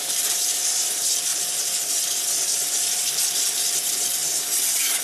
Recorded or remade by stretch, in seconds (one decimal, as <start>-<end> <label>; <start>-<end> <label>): 0.0-1.3 remade; 1.3-2.9 recorded; 2.9-4.2 remade; 4.2-5.0 recorded